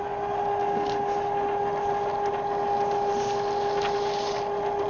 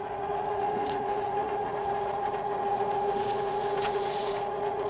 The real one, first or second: first